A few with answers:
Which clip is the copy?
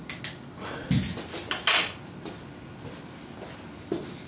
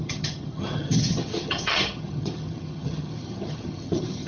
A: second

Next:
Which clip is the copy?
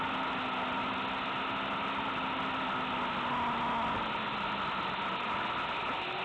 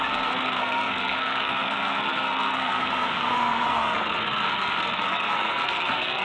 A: second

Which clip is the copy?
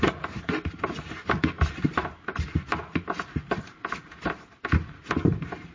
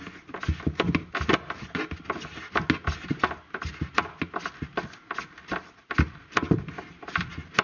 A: first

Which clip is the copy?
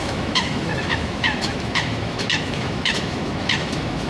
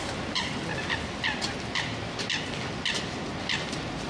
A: first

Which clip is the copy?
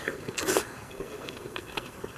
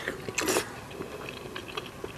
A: first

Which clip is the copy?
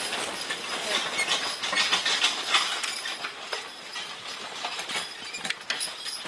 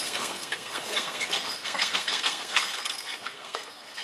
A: second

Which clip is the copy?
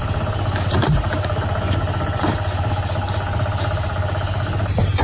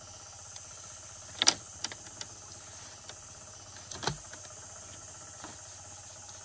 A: first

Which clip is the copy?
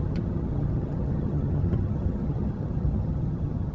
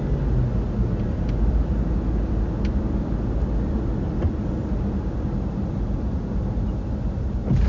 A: first